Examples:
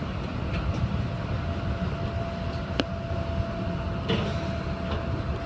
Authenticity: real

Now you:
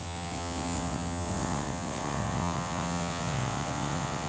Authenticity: fake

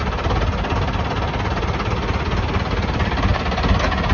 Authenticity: real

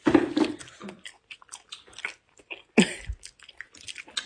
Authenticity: real